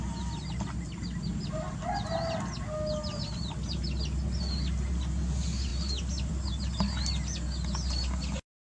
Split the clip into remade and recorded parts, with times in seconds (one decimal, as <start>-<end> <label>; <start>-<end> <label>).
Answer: 0.0-8.7 recorded